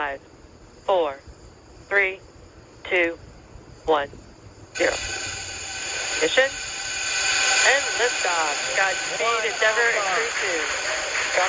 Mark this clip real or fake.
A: real